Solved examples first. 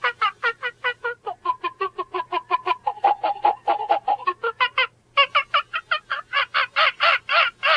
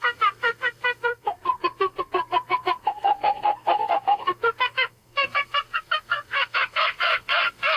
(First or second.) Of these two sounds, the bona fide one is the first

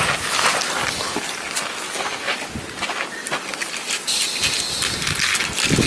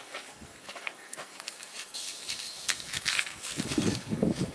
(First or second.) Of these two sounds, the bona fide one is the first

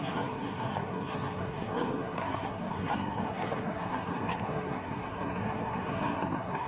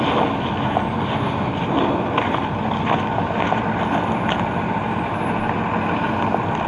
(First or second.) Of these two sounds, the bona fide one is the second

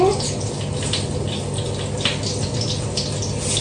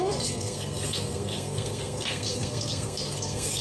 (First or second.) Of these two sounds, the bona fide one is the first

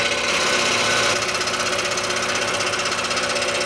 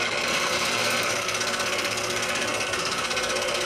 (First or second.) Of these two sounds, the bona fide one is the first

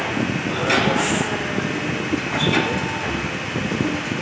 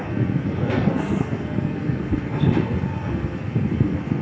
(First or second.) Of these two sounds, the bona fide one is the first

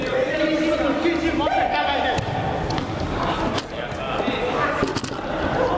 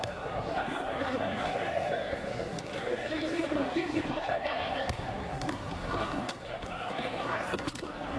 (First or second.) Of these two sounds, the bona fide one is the first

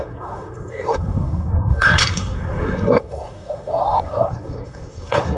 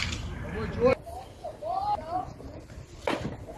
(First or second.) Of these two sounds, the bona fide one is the second